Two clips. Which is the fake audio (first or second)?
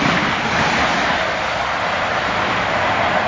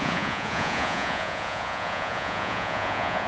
second